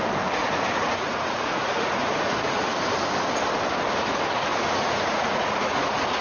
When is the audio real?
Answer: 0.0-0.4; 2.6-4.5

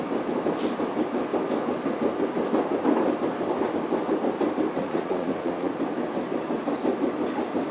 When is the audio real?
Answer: 0.0-4.8; 5.7-7.7